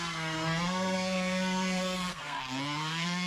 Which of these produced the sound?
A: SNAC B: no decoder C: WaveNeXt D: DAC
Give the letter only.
A